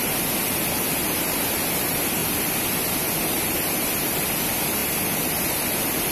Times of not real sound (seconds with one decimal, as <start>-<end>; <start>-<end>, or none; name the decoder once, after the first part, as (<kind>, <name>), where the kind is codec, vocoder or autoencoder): 0.0-2.2 (vocoder, BigVGAN v2); 3.2-6.1